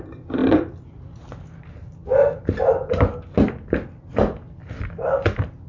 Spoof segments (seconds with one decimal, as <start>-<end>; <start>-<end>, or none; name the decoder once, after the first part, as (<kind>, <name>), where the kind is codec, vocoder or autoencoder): none